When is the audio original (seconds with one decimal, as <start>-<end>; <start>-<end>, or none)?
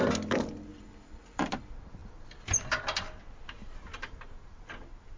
0.0-0.7; 1.5-5.2